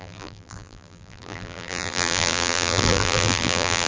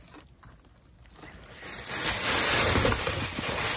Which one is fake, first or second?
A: first